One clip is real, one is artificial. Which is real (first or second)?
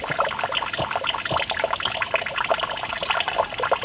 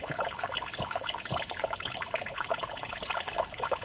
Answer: first